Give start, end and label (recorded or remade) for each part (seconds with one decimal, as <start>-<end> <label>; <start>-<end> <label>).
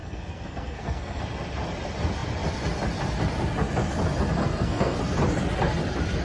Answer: 0.0-1.2 remade; 1.2-4.4 recorded; 4.4-5.0 remade; 5.0-6.2 recorded